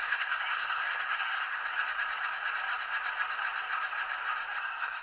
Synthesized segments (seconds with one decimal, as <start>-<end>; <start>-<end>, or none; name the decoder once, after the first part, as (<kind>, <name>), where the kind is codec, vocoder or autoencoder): 0.0-1.6 (codec, SNAC); 4.6-5.0